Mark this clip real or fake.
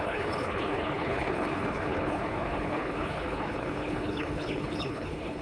fake